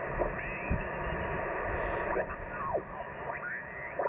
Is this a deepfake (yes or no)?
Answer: no